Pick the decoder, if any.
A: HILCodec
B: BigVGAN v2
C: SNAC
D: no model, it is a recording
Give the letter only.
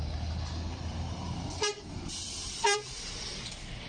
D